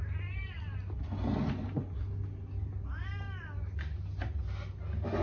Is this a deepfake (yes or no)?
no